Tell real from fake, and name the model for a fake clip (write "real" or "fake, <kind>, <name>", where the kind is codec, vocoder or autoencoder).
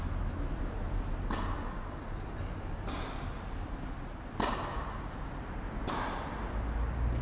real